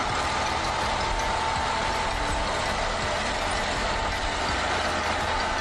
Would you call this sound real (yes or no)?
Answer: yes